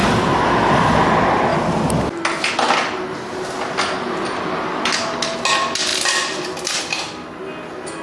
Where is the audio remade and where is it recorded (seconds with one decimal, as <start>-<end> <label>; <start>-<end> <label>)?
0.0-8.0 recorded